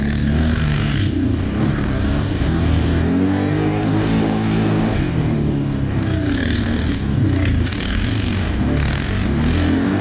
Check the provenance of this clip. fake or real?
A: fake